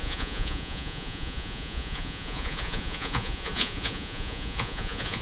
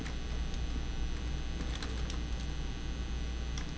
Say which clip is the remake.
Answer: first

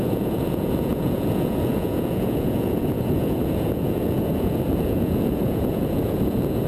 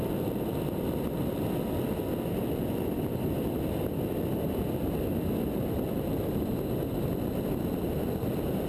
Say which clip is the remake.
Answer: first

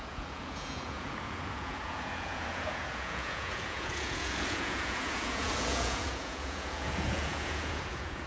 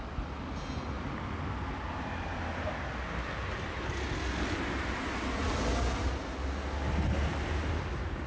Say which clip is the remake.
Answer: first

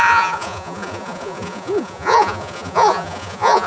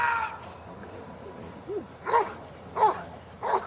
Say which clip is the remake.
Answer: first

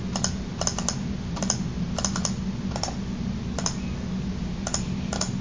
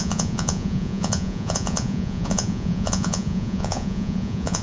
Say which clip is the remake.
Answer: second